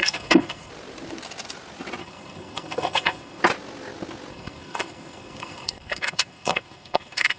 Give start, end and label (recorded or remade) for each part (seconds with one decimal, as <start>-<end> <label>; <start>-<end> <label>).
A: 0.0-0.7 remade; 0.7-2.0 recorded; 2.0-3.4 remade; 3.4-4.3 recorded; 4.3-7.4 remade